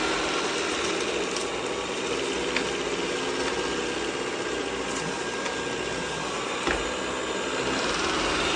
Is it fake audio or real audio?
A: real